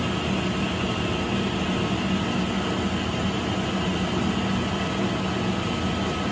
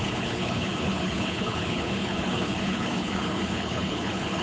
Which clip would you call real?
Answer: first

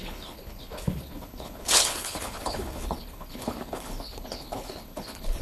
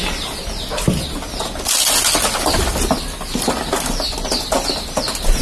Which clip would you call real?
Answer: second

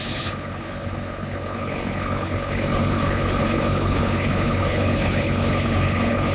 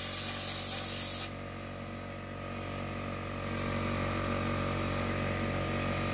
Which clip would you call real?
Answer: second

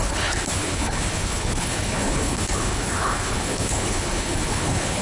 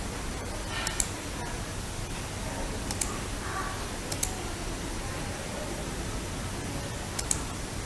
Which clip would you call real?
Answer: second